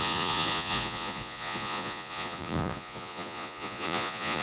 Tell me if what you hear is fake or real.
fake